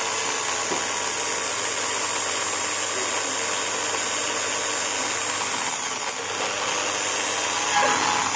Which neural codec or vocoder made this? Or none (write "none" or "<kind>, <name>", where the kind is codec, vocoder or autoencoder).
none